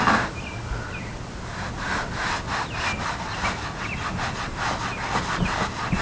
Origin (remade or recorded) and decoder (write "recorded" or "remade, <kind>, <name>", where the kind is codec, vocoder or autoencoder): recorded